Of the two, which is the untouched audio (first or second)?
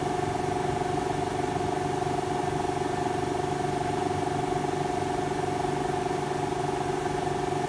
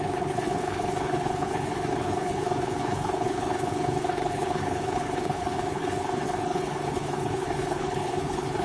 first